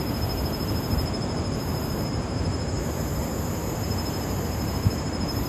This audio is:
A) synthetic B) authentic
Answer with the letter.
A